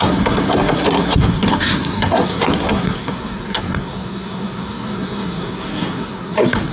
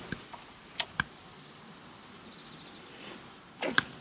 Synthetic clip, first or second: first